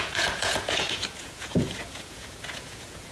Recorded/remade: remade